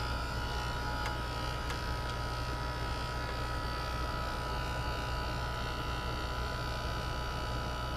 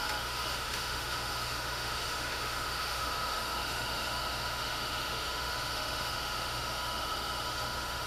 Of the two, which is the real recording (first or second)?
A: first